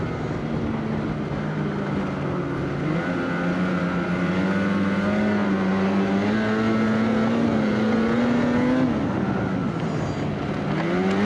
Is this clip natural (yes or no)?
yes